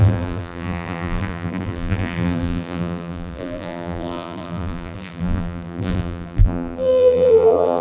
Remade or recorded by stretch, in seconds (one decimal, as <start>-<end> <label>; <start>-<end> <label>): 0.0-7.8 remade